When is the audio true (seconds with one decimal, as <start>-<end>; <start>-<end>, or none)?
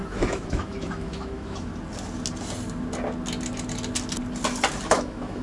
1.7-4.9